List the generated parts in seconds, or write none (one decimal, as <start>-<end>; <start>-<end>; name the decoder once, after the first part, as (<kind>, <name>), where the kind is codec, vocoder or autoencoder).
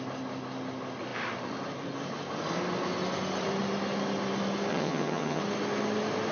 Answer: 4.7-5.4 (vocoder, HiFi-GAN)